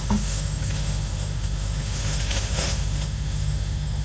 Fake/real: fake